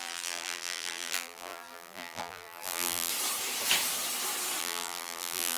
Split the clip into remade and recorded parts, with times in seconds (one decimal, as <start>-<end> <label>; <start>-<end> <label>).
0.0-3.1 remade; 3.1-4.6 recorded; 4.6-5.6 remade